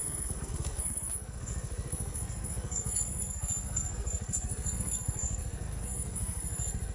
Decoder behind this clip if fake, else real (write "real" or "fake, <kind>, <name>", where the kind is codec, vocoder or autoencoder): fake, codec, SNAC